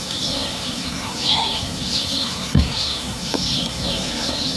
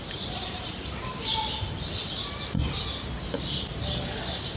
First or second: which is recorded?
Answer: second